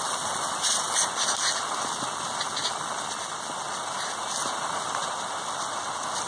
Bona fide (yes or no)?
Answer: yes